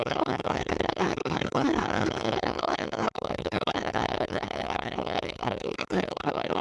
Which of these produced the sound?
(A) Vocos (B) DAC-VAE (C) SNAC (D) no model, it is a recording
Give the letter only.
C